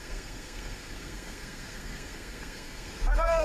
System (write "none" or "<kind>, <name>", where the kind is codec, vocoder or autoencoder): codec, SNAC